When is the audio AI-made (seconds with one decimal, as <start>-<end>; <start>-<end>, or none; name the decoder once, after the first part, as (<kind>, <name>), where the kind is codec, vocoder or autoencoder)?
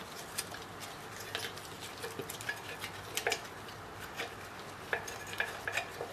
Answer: none